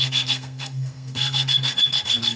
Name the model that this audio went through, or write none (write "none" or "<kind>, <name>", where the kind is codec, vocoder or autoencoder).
codec, SNAC